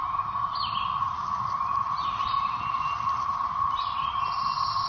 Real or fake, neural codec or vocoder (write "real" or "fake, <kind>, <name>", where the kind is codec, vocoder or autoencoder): real